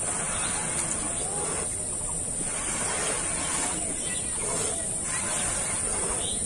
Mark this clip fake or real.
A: real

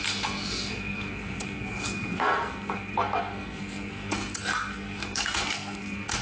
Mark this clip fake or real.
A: fake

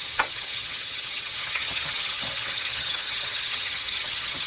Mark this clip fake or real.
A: fake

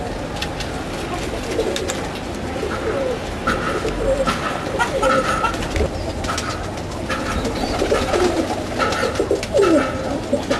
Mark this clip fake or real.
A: real